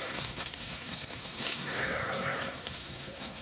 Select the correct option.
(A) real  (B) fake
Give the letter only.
B